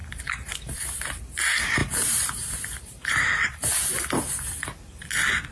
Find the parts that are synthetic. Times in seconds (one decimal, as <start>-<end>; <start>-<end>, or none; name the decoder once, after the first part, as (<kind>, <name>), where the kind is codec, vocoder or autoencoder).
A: 0.0-1.4 (vocoder, BigVGAN v2); 1.8-3.7